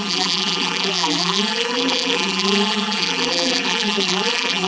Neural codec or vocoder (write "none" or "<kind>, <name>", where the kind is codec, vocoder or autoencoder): vocoder, BigVGAN v2